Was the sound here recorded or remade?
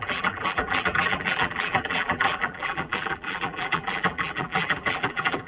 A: remade